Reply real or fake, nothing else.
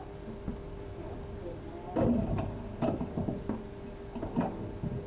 real